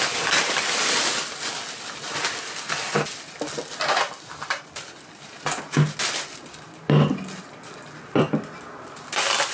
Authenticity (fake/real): real